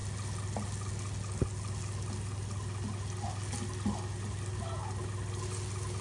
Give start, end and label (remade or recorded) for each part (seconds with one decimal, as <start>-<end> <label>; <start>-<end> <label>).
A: 0.0-6.0 recorded